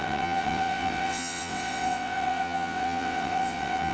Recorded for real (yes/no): no